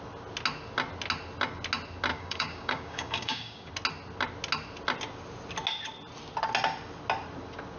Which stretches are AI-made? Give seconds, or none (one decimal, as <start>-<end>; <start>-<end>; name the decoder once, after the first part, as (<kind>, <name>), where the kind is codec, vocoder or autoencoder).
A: 2.1-3.7 (codec, DAC)